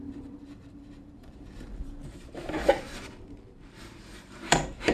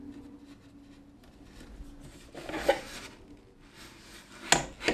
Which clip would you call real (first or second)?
second